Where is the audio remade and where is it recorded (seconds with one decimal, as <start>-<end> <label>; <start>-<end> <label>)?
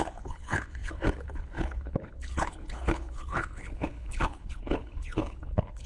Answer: 0.0-5.9 remade